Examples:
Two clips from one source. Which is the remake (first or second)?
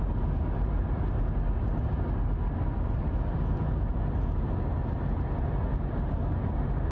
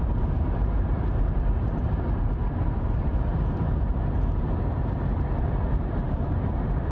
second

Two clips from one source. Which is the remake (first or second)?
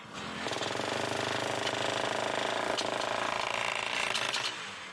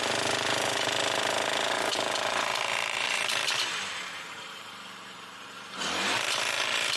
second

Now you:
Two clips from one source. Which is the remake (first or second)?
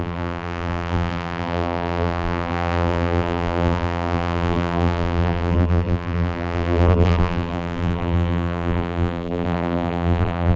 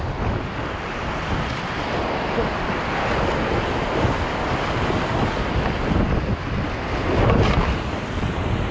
first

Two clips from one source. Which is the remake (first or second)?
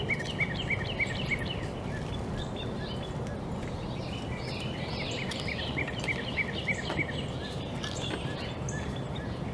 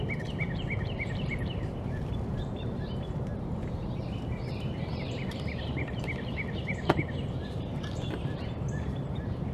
second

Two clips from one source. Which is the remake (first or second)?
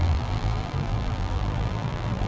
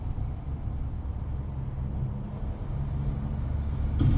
first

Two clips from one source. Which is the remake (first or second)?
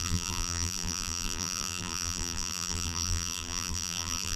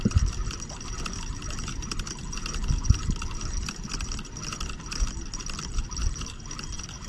first